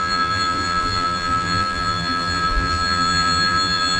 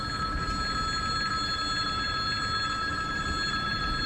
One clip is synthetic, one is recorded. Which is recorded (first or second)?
second